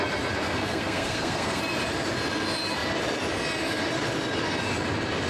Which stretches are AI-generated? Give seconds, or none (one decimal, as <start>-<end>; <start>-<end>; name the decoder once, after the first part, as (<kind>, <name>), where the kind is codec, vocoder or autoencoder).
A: 0.4-1.6 (codec, SNAC)